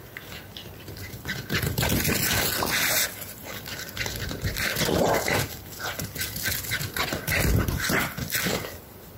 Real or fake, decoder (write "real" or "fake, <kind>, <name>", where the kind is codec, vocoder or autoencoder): real